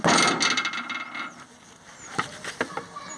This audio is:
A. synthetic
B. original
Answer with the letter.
B